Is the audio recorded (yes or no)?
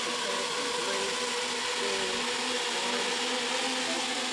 yes